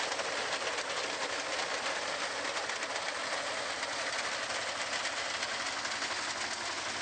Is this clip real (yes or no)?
yes